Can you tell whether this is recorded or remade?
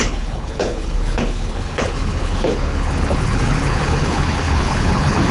remade